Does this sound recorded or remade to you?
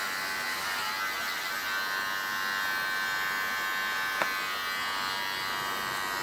recorded